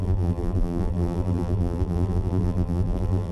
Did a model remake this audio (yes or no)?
yes